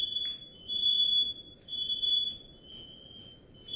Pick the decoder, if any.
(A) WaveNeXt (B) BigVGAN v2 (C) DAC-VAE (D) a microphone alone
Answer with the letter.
B